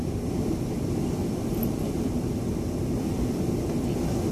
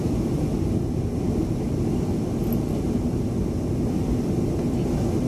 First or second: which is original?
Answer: second